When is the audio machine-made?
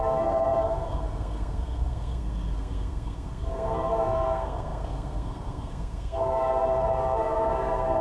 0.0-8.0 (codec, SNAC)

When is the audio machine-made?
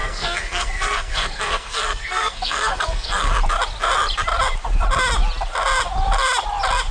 0.0-3.3 (codec, SNAC)